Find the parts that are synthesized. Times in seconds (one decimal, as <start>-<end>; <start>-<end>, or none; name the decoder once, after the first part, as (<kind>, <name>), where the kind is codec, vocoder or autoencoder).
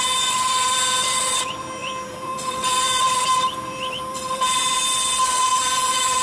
0.0-6.2 (vocoder, BigVGAN v2)